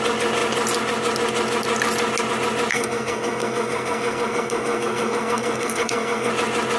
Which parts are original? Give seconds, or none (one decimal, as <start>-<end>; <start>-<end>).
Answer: 0.0-2.7; 6.3-6.8